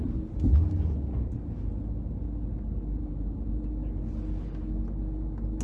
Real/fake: real